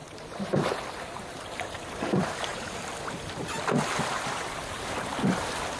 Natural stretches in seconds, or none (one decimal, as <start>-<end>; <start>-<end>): 0.8-2.5; 3.4-5.8